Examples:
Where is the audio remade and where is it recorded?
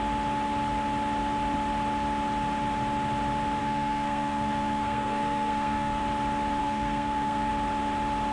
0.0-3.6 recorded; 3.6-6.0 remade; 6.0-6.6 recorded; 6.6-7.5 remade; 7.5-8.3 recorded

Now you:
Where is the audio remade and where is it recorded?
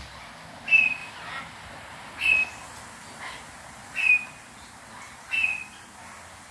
0.0-6.5 recorded